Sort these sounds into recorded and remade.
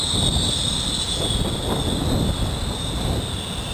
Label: recorded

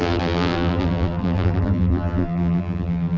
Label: remade